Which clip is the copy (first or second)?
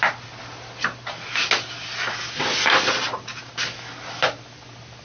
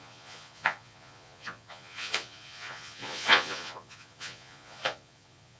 second